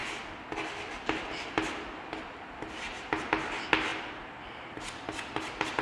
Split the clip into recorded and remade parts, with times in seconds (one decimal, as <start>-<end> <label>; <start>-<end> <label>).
0.0-3.9 recorded; 3.9-4.8 remade; 4.8-5.8 recorded